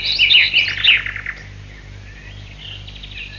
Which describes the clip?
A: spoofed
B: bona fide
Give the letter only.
B